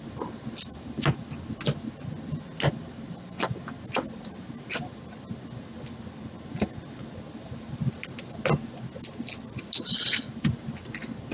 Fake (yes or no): no